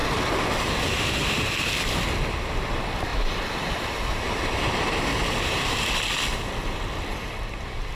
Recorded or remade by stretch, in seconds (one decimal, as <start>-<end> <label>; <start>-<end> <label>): 0.0-3.1 recorded; 3.1-5.6 remade; 5.6-7.1 recorded; 7.1-7.9 remade